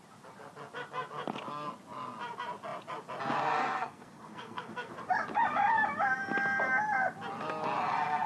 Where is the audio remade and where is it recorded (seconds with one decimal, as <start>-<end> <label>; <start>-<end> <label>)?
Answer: 0.0-3.6 recorded; 3.6-4.9 remade; 4.9-8.3 recorded